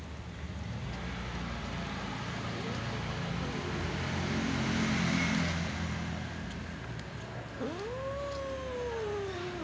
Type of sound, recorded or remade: recorded